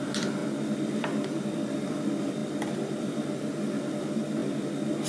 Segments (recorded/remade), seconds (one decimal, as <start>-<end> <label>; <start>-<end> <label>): 0.0-0.4 remade; 0.4-1.0 recorded; 1.0-4.4 remade; 4.4-5.1 recorded